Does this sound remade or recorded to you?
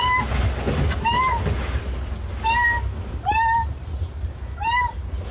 recorded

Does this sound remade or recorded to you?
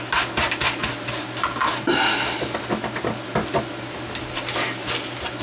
recorded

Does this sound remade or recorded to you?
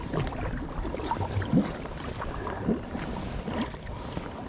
remade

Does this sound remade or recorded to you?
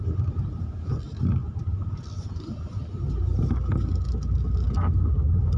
recorded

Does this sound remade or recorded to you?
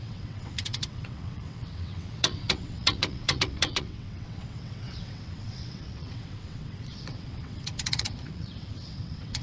remade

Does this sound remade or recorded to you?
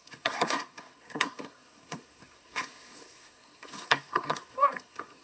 remade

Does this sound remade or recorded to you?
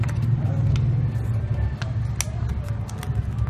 recorded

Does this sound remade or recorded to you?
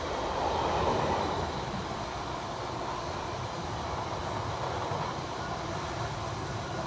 remade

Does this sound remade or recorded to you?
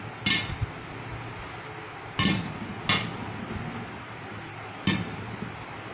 recorded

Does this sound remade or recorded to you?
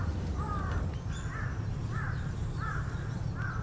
remade